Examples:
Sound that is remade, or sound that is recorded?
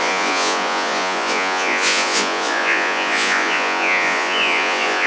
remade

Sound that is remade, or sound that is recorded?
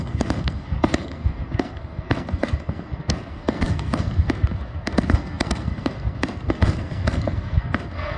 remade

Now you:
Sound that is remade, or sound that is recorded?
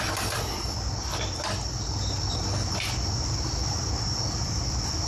recorded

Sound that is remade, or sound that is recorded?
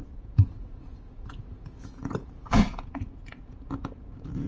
remade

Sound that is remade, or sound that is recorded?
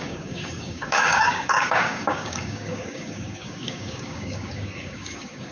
remade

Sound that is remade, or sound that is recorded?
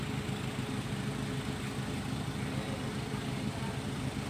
recorded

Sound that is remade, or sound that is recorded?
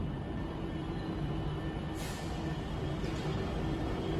remade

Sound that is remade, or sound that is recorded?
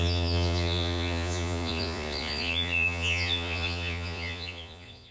remade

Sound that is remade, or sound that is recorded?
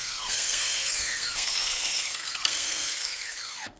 remade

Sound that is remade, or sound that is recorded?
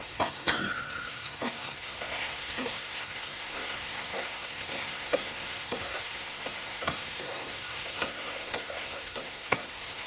remade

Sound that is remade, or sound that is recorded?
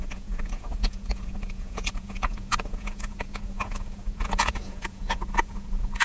remade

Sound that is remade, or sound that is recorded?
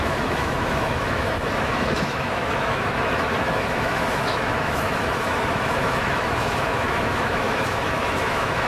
remade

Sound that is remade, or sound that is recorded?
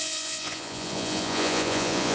remade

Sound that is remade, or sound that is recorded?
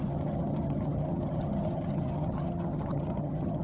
remade